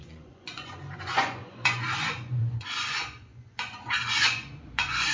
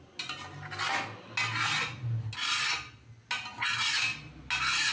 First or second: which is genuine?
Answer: second